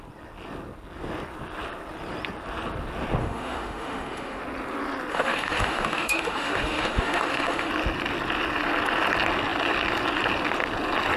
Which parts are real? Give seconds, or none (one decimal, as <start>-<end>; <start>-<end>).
0.0-3.2; 4.4-5.1; 7.7-11.2